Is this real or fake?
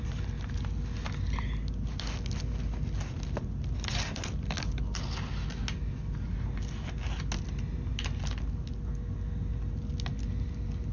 real